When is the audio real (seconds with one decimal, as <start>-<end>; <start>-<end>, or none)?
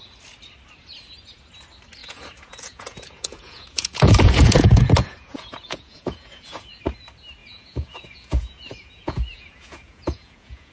0.0-2.0; 6.8-7.4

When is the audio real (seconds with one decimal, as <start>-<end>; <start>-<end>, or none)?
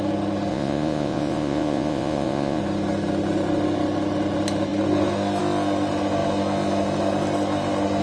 0.0-0.5; 2.6-8.0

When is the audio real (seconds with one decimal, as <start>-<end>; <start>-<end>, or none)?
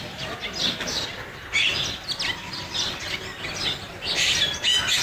0.0-5.0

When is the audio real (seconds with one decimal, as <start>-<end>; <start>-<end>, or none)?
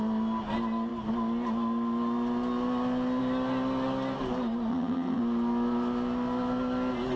0.0-4.7; 5.2-7.2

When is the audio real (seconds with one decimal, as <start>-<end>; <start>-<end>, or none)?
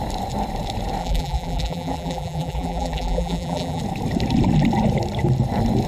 0.0-1.0; 3.8-5.9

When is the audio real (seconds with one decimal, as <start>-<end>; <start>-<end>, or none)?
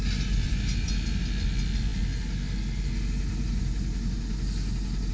0.0-5.1